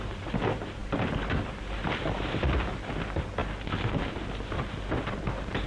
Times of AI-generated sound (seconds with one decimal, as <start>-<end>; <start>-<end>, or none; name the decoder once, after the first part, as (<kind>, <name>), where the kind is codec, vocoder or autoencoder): none